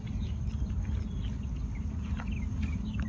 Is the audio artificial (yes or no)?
no